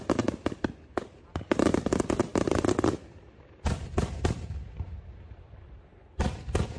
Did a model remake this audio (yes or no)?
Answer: no